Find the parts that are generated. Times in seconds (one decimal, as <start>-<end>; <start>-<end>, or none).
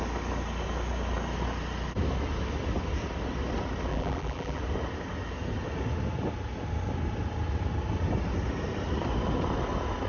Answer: 3.9-4.6